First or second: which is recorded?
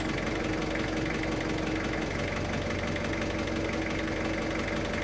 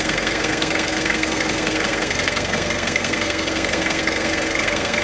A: first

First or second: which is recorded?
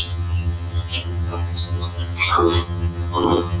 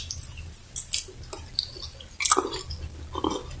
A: second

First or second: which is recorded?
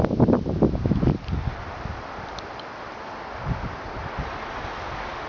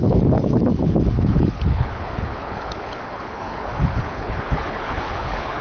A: first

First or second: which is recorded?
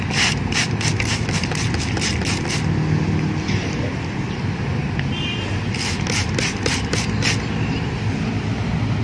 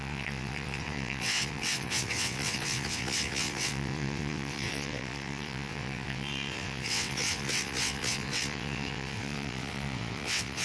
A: first